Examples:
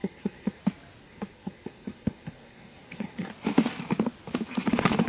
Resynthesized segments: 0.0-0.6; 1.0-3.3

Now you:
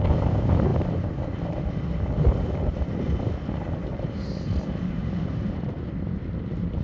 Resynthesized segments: none

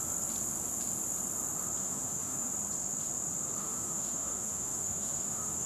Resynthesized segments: 1.8-2.5; 3.6-5.7

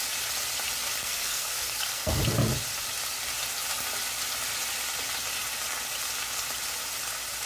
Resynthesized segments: 1.0-2.2

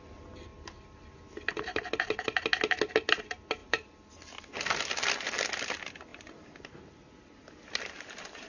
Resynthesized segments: 3.6-4.1